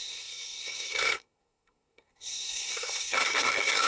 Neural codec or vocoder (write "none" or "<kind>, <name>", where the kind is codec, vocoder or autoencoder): codec, SNAC